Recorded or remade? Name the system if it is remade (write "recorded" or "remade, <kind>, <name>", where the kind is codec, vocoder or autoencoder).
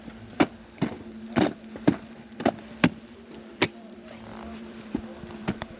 remade, vocoder, BigVGAN v2